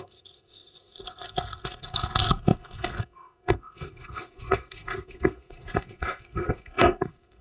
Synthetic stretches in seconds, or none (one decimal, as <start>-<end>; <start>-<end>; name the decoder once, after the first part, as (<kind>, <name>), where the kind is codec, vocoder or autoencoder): 0.0-7.4 (codec, SNAC)